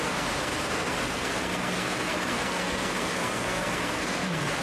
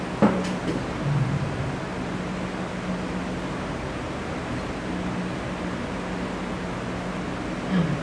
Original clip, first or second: second